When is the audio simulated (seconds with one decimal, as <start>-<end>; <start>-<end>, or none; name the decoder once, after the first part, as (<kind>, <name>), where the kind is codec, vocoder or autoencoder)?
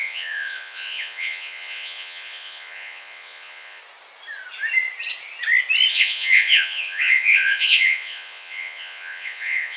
0.0-3.8 (vocoder, Vocos); 5.9-9.8